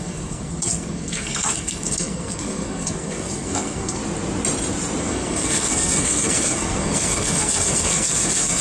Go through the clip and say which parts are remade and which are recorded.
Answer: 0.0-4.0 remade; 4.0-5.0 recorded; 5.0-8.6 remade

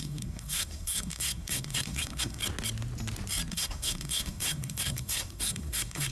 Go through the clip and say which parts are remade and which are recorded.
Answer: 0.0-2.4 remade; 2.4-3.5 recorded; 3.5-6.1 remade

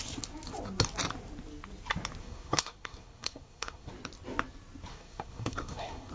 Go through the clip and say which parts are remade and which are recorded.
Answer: 0.0-2.2 recorded; 2.2-3.9 remade; 3.9-4.9 recorded; 4.9-6.1 remade